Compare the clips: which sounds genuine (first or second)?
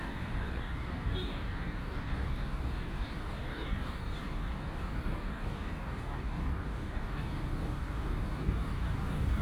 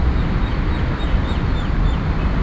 second